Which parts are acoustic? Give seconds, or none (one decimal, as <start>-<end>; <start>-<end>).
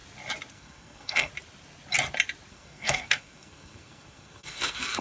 0.0-0.5; 1.3-2.5